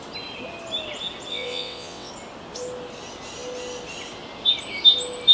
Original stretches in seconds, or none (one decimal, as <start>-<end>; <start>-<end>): 0.0-1.3; 2.1-5.3